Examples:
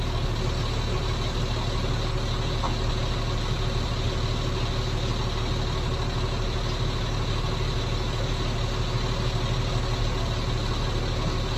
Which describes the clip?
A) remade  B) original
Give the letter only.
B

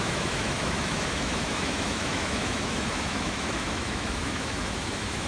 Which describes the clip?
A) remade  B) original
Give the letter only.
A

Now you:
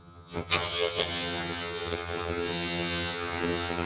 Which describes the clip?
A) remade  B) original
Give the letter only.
A